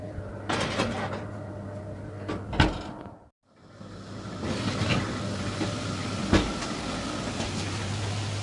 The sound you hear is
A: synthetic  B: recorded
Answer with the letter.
B